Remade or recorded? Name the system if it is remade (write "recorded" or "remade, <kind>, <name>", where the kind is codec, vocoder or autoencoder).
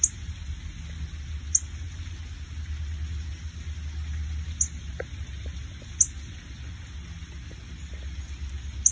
recorded